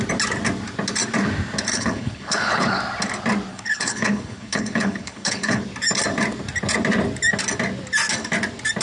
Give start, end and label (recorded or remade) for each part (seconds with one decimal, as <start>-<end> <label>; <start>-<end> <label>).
0.0-1.7 recorded; 1.7-2.8 remade; 2.8-3.5 recorded; 3.5-5.6 remade; 5.6-8.8 recorded

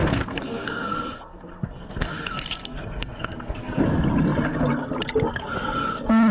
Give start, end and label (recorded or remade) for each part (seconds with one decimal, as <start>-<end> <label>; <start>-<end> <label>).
0.0-3.8 remade; 3.8-6.3 recorded

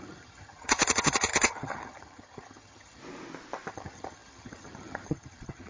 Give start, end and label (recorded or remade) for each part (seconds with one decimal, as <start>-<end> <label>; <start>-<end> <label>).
0.0-3.0 remade; 3.0-3.7 recorded; 3.7-5.7 remade

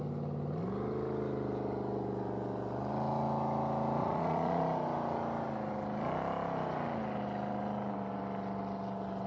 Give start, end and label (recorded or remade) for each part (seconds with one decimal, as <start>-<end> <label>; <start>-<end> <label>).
0.0-4.0 recorded; 4.0-4.6 remade; 4.6-9.3 recorded